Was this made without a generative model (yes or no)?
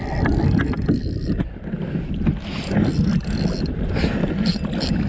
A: yes